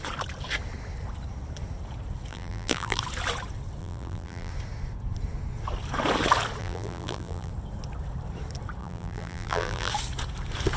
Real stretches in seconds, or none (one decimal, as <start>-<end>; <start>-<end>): 0.0-2.3; 3.0-3.8; 4.5-6.6; 7.5-8.8; 9.9-10.8